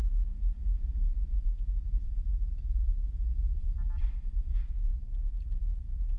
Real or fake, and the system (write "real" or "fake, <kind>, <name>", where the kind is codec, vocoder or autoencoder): fake, vocoder, BigVGAN v2